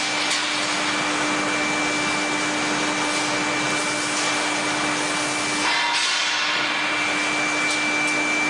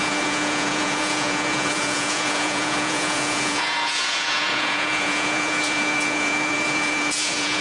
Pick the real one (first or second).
first